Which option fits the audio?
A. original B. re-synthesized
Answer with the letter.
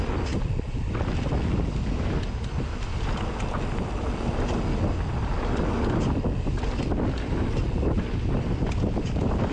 A